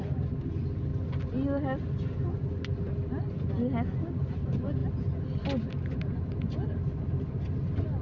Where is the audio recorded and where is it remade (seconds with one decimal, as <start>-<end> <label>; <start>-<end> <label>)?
0.0-8.0 recorded